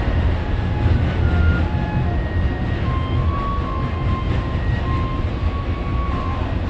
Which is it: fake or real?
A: real